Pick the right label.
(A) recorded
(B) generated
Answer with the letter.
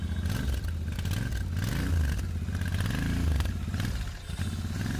A